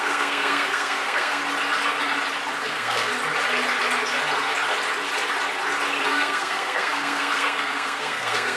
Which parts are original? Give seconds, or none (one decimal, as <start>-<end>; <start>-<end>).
1.4-2.6; 3.1-6.1